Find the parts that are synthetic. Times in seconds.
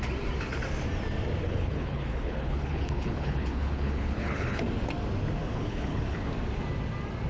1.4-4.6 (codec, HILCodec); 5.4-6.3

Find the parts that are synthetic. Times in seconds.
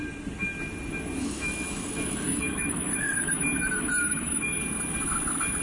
1.2-4.6 (autoencoder, DAC-VAE)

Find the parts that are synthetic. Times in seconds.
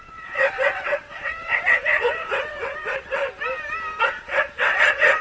0.0-3.2 (vocoder, WaveNeXt); 4.0-5.2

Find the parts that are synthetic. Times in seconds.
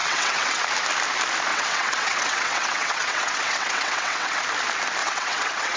0.0-0.6 (vocoder, WaveNeXt); 1.5-4.4; 5.0-5.8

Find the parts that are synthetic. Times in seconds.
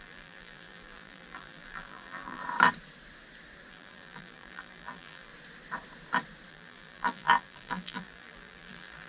0.0-2.4 (vocoder, BigVGAN v2); 3.7-5.3; 6.5-9.1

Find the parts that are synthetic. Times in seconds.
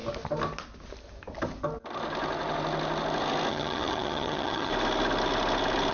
3.5-4.7 (vocoder, HiFi-GAN)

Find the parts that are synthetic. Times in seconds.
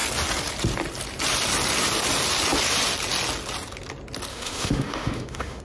4.3-5.6 (autoencoder, DAC-VAE)